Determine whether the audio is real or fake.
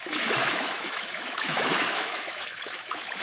fake